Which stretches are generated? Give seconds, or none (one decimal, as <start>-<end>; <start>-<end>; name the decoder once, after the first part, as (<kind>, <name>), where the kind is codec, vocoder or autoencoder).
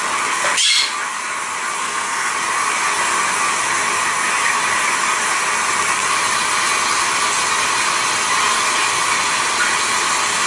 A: 1.8-2.3 (codec, SNAC)